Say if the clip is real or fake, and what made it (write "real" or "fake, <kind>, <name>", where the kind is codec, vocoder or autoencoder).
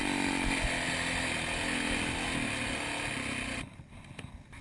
real